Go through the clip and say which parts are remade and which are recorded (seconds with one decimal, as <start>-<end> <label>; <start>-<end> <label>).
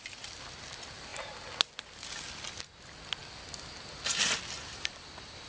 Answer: 0.0-5.5 recorded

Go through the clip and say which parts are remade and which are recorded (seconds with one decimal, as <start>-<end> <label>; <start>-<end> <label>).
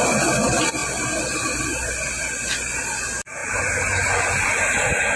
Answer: 0.0-5.2 recorded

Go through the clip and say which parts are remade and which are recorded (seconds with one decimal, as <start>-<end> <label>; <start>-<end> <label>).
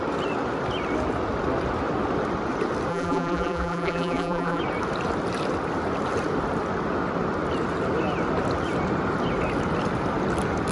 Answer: 0.0-2.9 recorded; 2.9-4.6 remade; 4.6-10.7 recorded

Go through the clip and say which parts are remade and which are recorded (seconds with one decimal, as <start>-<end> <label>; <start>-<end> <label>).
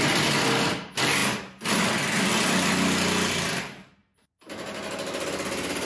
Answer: 0.0-5.9 recorded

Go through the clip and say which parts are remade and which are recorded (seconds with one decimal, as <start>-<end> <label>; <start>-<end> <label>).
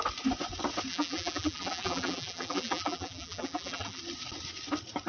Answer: 0.0-0.9 recorded; 0.9-4.0 remade; 4.0-5.1 recorded